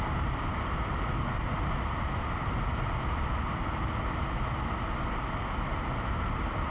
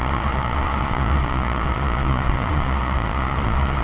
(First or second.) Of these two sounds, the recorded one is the first